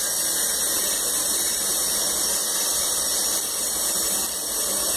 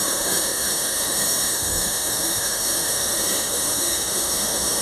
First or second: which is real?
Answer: first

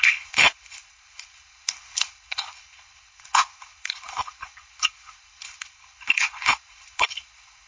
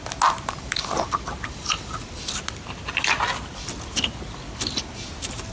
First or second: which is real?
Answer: second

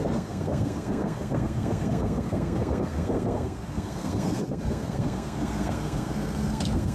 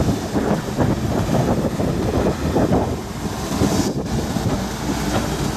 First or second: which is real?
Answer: second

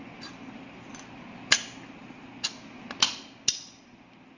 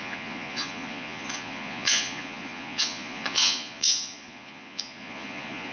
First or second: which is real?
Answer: first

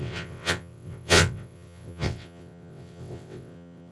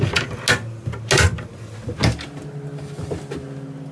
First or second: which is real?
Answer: second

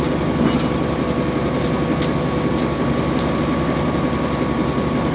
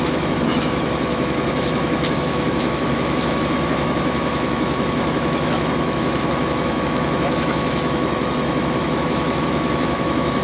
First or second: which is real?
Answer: first